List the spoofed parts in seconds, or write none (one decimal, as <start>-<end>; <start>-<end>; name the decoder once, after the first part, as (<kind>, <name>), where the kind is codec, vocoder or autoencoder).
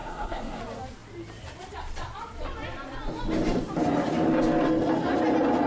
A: 0.0-0.6 (codec, SNAC)